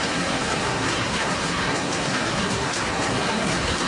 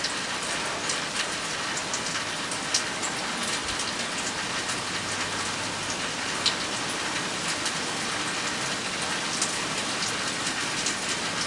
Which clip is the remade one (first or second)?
first